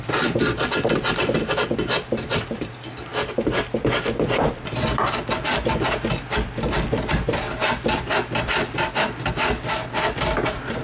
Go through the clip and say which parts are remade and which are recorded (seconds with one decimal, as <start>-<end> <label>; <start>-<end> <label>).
0.0-10.8 recorded

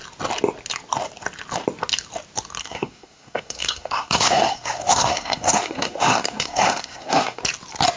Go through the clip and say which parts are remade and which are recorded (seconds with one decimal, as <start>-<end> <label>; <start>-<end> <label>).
0.0-2.6 recorded; 2.6-7.4 remade; 7.4-8.0 recorded

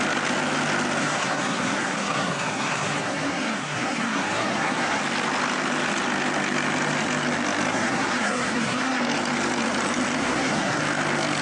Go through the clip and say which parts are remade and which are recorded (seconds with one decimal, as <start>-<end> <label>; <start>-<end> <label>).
0.0-1.0 recorded; 1.0-5.0 remade; 5.0-7.7 recorded; 7.7-9.0 remade; 9.0-10.2 recorded; 10.2-10.8 remade; 10.8-11.4 recorded

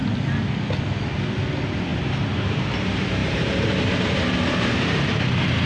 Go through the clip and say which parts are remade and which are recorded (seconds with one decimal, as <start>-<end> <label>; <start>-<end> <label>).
0.0-1.9 recorded; 1.9-2.8 remade; 2.8-3.2 recorded; 3.2-5.3 remade; 5.3-5.7 recorded

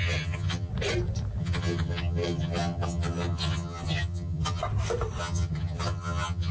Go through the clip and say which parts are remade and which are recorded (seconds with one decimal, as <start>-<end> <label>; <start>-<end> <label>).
0.0-0.7 remade; 0.7-1.4 recorded; 1.4-4.6 remade; 4.6-5.2 recorded; 5.2-6.5 remade

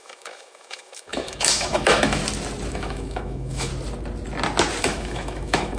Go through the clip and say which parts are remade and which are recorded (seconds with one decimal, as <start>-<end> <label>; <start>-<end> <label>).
0.0-2.2 remade; 2.2-2.7 recorded; 2.7-3.7 remade; 3.7-4.8 recorded; 4.8-5.8 remade

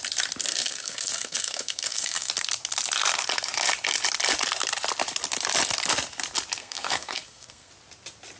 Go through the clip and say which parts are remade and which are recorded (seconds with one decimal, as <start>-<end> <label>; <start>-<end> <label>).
0.0-0.5 recorded; 0.5-2.3 remade; 2.3-6.6 recorded; 6.6-7.7 remade; 7.7-8.4 recorded